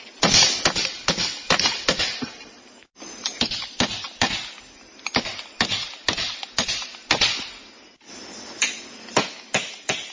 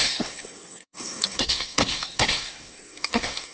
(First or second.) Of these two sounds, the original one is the first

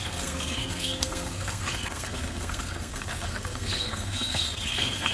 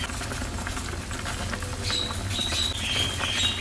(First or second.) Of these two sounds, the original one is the second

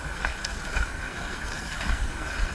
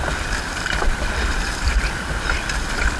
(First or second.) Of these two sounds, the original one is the second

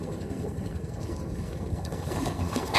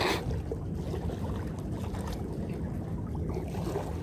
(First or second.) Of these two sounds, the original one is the second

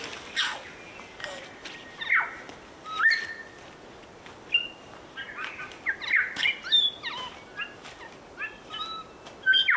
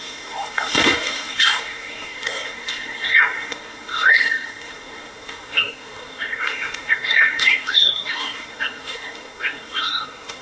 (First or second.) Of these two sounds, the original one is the first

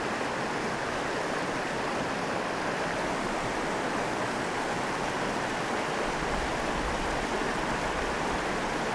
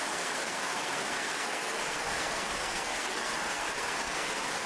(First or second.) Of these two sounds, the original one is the first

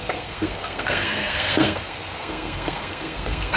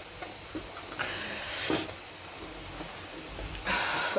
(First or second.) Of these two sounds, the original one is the second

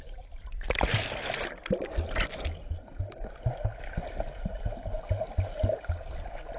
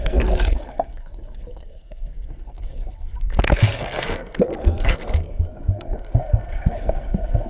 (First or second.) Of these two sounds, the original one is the first